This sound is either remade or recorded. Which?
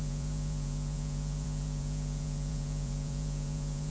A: remade